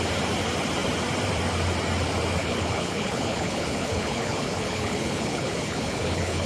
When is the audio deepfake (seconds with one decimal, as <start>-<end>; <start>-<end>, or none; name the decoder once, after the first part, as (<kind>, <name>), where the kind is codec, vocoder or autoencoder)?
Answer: 2.4-6.5 (codec, HILCodec)

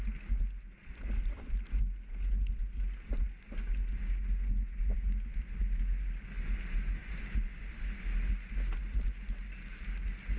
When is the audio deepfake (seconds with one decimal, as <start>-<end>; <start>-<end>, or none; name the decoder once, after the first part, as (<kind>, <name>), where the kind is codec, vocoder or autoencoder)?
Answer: none

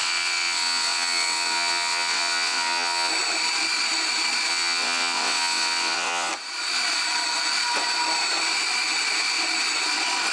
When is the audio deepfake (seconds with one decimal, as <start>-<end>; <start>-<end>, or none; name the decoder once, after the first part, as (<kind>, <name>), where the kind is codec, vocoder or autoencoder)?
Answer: 0.0-3.1 (vocoder, WaveNeXt); 4.5-6.3